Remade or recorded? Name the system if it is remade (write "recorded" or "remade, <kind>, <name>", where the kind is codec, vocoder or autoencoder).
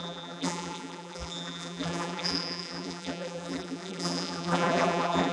remade, vocoder, BigVGAN v2